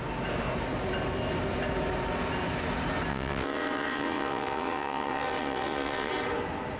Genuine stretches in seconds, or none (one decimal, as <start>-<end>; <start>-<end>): 0.0-3.1; 6.1-6.8